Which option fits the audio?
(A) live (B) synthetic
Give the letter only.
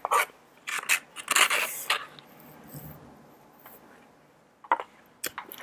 A